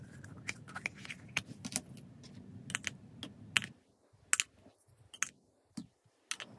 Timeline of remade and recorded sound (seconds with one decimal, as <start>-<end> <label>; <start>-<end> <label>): 0.0-6.6 recorded